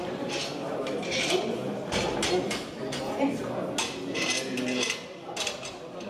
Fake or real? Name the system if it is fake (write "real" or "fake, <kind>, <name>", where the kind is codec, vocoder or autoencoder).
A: real